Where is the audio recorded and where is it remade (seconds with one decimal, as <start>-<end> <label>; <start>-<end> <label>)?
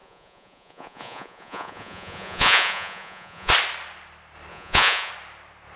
0.0-3.5 remade; 3.5-4.5 recorded; 4.5-5.1 remade; 5.1-5.8 recorded